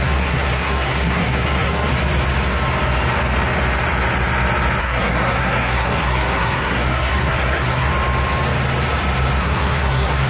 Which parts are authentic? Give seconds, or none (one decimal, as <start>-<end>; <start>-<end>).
1.9-4.8; 7.9-9.4